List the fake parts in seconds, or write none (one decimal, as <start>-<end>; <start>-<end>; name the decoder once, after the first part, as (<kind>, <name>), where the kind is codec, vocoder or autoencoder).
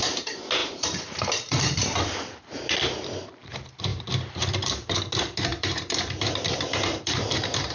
0.6-2.6 (vocoder, BigVGAN v2); 3.9-5.0; 5.5-7.7